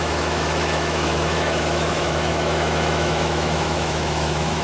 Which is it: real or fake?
fake